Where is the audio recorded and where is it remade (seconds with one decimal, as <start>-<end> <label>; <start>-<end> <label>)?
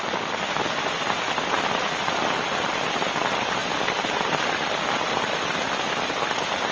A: 0.0-6.7 recorded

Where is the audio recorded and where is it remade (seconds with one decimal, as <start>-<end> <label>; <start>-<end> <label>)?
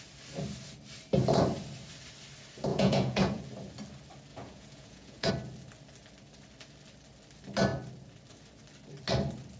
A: 0.0-2.7 recorded; 2.7-3.4 remade; 3.4-4.3 recorded; 4.3-5.3 remade; 5.3-9.6 recorded